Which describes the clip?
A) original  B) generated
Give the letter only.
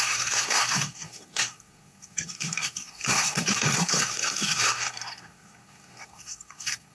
B